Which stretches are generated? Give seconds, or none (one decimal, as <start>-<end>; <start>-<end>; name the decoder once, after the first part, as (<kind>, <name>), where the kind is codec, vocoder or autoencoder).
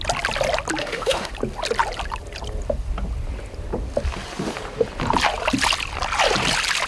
0.8-1.3 (autoencoder, DAC-VAE)